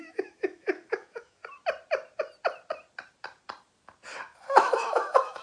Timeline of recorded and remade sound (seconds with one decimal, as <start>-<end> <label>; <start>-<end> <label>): 0.0-1.4 remade; 1.4-4.6 recorded; 4.6-5.4 remade